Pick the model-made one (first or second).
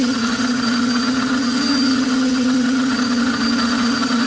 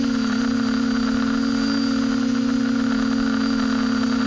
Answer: first